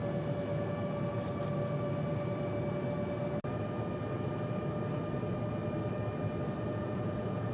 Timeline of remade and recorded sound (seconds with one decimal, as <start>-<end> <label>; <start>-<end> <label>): 0.0-6.7 recorded; 6.7-7.5 remade